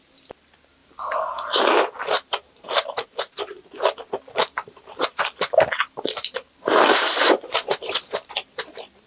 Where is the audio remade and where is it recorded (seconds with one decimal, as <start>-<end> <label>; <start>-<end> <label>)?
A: 0.0-0.8 recorded; 0.8-1.6 remade; 1.6-2.0 recorded; 2.0-3.9 remade; 3.9-4.4 recorded; 4.4-9.1 remade